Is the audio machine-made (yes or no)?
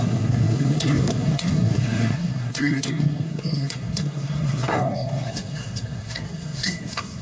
yes